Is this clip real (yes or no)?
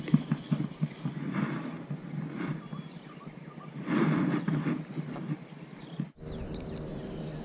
yes